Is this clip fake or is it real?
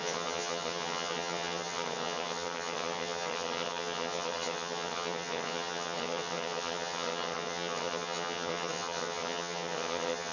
fake